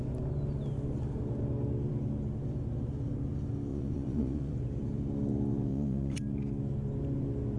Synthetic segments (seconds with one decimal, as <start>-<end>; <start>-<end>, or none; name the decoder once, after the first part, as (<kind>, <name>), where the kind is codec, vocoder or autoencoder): 3.7-4.5 (vocoder, Vocos); 5.7-6.2